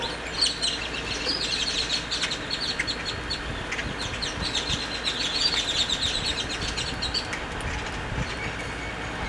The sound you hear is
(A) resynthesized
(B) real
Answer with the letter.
B